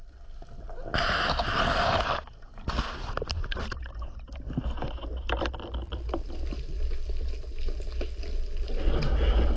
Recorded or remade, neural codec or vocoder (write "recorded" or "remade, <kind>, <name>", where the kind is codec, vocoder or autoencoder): recorded